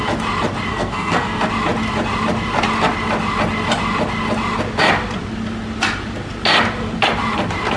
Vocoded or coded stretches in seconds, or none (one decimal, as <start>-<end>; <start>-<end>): 0.7-1.5